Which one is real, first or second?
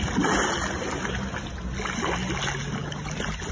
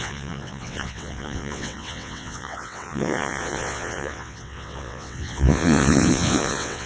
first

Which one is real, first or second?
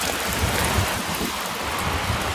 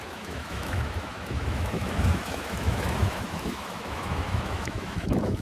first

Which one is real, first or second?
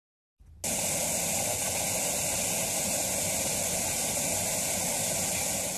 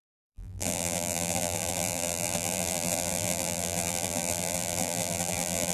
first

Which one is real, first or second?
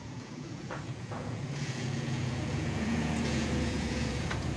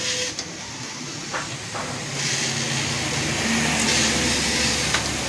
second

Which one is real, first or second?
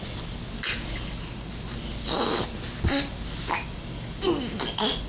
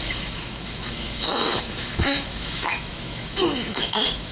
first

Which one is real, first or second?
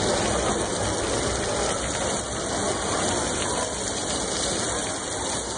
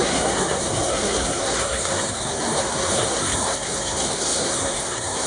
first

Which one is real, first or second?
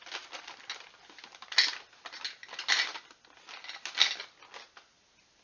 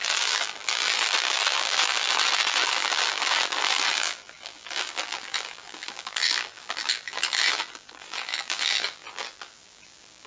first